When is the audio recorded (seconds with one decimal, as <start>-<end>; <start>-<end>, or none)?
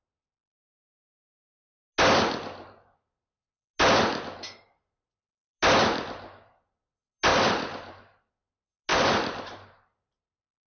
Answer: 0.0-7.3; 8.3-8.9